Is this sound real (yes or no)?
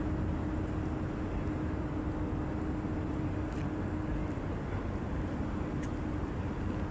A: yes